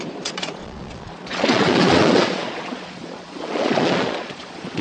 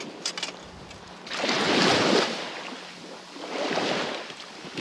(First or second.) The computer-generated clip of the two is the first